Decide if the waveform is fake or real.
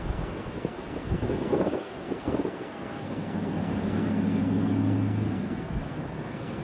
fake